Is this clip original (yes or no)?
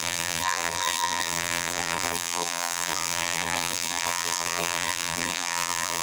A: no